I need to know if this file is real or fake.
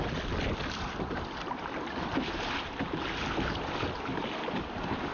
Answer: real